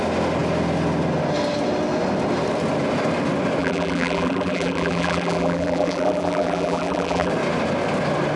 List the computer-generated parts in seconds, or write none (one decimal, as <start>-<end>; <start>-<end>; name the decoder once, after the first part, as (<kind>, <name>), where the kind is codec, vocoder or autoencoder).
3.6-7.3 (vocoder, BigVGAN v2)